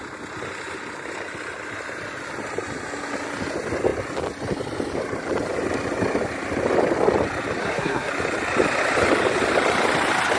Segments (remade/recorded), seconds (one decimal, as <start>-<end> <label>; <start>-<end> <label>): 0.0-7.6 recorded; 7.6-8.1 remade; 8.1-10.4 recorded

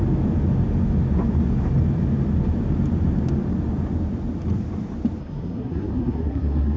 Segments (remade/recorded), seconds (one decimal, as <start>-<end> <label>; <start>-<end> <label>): 0.0-5.2 recorded; 5.2-6.8 remade

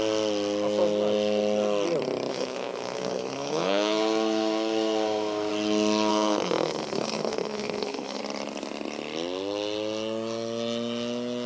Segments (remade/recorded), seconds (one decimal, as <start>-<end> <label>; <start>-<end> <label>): 0.0-2.3 recorded; 2.3-5.5 remade; 5.5-6.1 recorded; 6.1-8.2 remade; 8.2-11.5 recorded

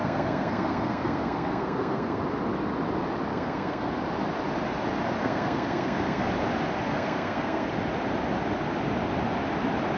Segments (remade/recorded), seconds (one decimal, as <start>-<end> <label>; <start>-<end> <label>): 0.0-2.2 remade; 2.2-3.3 recorded; 3.3-3.9 remade; 3.9-5.2 recorded; 5.2-6.3 remade; 6.3-6.9 recorded; 6.9-7.7 remade; 7.7-10.0 recorded

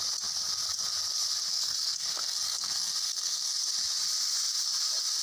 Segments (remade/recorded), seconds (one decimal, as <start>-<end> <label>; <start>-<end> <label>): 0.0-1.5 recorded; 1.5-3.6 remade; 3.6-5.2 recorded

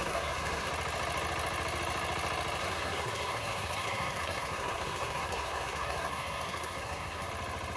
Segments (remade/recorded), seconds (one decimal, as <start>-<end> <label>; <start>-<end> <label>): 0.0-0.7 remade; 0.7-2.6 recorded; 2.6-7.3 remade; 7.3-7.8 recorded